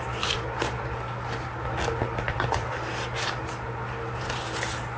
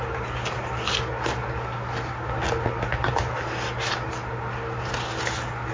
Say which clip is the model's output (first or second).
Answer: first